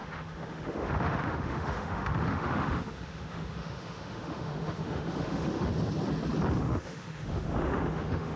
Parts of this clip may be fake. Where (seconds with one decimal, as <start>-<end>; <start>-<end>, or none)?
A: 0.0-5.7; 6.6-8.4